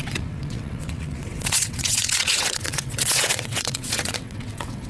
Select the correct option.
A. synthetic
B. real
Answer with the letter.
A